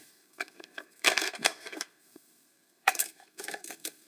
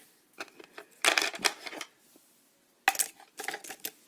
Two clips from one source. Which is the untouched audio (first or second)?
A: second